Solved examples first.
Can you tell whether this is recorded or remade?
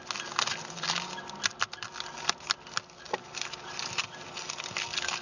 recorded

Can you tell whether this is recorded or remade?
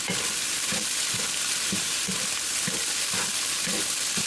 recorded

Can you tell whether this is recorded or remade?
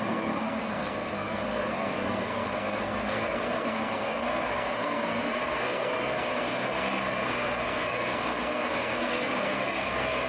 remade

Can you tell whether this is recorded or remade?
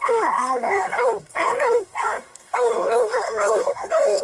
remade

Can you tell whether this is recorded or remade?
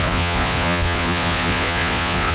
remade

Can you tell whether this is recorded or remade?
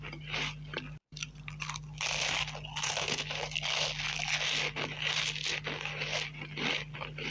recorded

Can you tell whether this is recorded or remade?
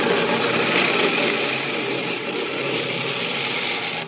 remade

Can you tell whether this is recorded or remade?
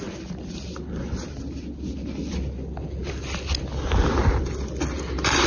recorded